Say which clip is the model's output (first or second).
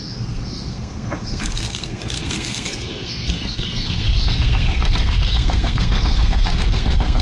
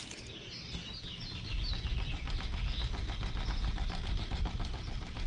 first